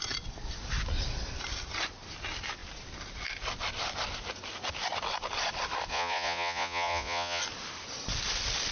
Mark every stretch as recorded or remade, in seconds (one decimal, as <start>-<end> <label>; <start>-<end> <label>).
0.0-5.9 recorded; 5.9-7.4 remade; 7.4-8.7 recorded